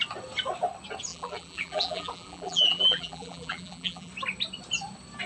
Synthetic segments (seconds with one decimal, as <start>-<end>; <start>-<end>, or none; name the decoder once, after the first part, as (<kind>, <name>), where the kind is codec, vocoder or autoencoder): 1.1-4.1 (vocoder, BigVGAN v2)